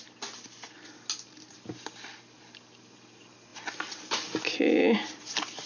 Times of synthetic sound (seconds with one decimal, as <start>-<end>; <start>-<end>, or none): none